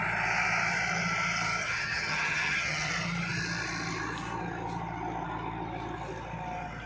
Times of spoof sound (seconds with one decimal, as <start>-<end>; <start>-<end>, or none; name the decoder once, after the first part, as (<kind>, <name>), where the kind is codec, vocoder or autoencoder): 1.6-2.9 (vocoder, HiFi-GAN)